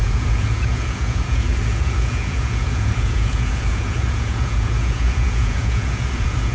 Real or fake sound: fake